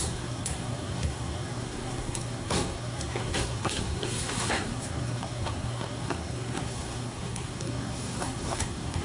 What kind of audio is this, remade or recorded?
remade